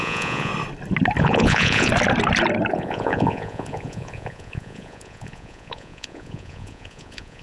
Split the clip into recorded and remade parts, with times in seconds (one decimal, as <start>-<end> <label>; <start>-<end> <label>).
0.0-0.5 remade; 0.5-1.2 recorded; 1.2-1.9 remade; 1.9-2.7 recorded; 2.7-7.4 remade